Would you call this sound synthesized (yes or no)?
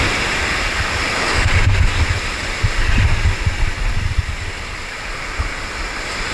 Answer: no